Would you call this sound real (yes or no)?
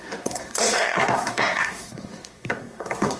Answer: no